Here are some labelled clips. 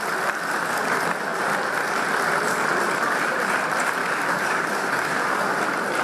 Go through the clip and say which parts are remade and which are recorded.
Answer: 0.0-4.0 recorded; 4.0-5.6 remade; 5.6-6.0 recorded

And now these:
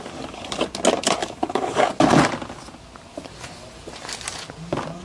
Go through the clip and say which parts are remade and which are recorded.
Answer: 0.0-1.2 recorded; 1.2-1.9 remade; 1.9-5.0 recorded

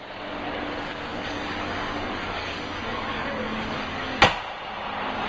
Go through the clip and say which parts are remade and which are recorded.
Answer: 0.0-1.1 recorded; 1.1-4.2 remade; 4.2-5.3 recorded